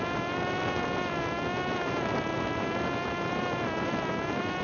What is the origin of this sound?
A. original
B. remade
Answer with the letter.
B